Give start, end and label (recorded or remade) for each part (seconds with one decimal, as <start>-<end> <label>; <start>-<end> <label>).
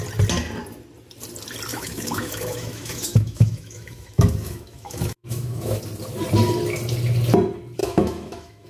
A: 0.0-1.7 recorded; 1.7-5.8 remade; 5.8-7.8 recorded; 7.8-8.7 remade